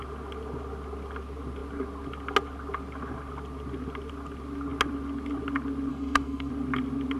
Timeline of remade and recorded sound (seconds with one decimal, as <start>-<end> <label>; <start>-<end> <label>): 0.0-5.9 recorded; 5.9-6.5 remade; 6.5-7.2 recorded